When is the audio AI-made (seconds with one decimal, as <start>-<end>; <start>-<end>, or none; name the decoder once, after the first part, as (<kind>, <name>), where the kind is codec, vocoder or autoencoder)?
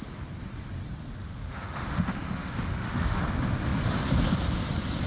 1.2-3.2 (autoencoder, DAC-VAE)